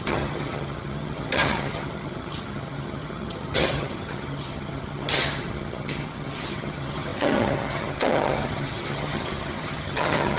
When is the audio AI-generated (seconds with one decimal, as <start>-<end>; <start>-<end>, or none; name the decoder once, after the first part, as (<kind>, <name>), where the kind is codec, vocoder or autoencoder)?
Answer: 0.0-10.4 (vocoder, HiFi-GAN)